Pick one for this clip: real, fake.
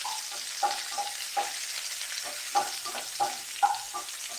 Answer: real